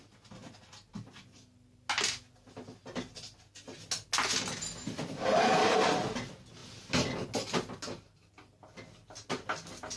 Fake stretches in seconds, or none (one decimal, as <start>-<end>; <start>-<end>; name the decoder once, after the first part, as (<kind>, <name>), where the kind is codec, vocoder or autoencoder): none